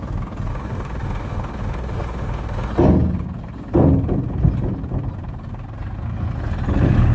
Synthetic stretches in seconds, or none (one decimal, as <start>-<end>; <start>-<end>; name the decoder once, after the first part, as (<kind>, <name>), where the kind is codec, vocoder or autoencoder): 0.5-2.7 (autoencoder, DAC-VAE)